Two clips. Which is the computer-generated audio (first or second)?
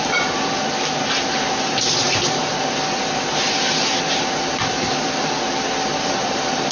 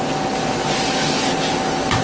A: first